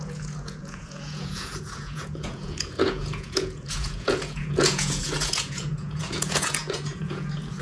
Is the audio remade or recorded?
remade